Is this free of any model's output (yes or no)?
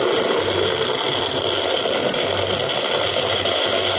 yes